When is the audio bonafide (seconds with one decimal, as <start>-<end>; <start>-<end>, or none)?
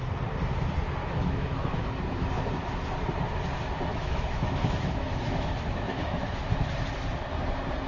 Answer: 0.0-1.0; 2.0-3.9; 6.6-7.9